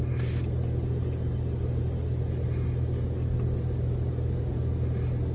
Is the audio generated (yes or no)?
no